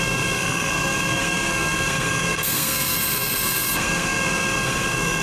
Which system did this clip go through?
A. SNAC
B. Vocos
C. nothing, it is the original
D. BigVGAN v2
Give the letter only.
A